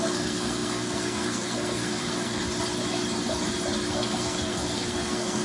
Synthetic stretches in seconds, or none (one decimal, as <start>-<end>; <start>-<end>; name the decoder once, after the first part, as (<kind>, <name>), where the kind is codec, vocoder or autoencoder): 0.0-2.4 (codec, SNAC); 3.9-5.4